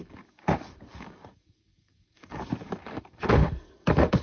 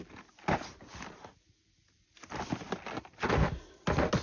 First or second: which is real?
second